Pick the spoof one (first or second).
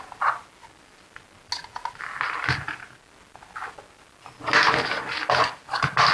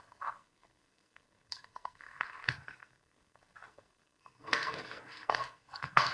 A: second